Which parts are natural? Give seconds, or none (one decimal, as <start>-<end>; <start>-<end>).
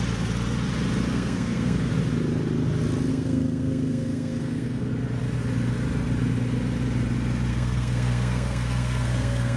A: 0.0-1.1; 1.9-3.1; 4.9-7.5